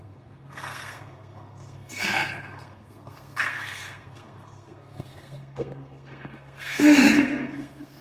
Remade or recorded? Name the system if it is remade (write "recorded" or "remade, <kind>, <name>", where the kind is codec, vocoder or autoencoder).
remade, codec, SNAC